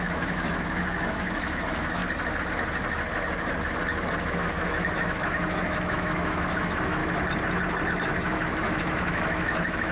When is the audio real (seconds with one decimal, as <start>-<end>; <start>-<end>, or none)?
2.0-4.2; 7.0-7.9